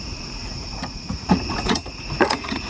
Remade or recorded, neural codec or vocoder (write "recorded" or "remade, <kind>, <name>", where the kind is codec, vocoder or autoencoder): remade, vocoder, Vocos